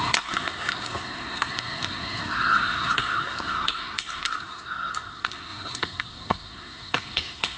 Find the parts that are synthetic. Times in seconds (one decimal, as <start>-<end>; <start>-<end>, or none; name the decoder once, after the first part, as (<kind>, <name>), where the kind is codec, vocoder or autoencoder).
0.0-7.6 (codec, SNAC)